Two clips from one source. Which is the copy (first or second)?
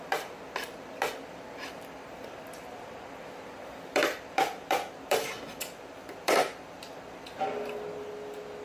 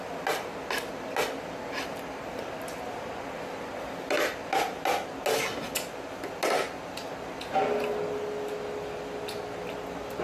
first